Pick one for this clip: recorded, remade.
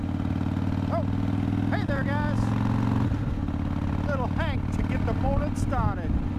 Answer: recorded